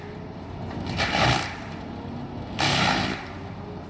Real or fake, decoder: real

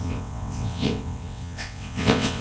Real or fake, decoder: fake, vocoder, WaveNeXt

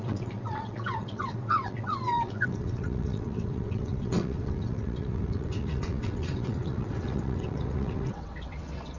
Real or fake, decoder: fake, vocoder, WaveNeXt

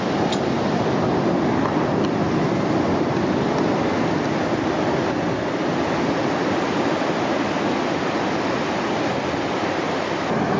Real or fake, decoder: real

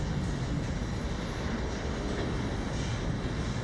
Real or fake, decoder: real